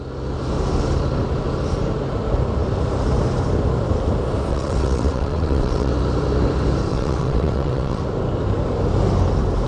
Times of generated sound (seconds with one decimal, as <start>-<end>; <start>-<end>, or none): 4.5-5.9; 6.9-8.0